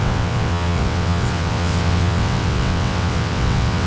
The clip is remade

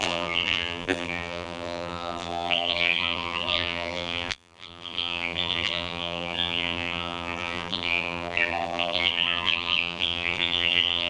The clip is remade